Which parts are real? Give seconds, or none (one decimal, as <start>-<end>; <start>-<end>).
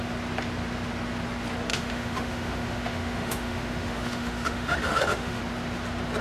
0.0-1.7; 5.4-6.2